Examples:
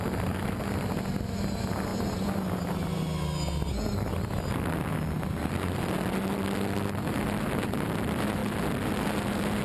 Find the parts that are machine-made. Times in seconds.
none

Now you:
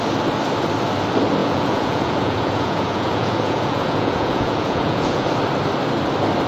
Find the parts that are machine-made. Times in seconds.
1.4-5.3

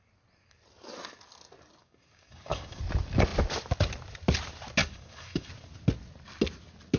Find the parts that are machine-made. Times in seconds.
1.8-2.8; 4.8-5.5